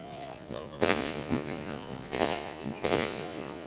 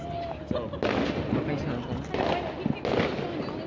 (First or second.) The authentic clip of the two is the second